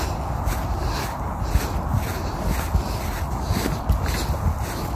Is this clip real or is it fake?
real